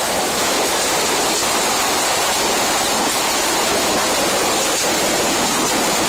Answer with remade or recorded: recorded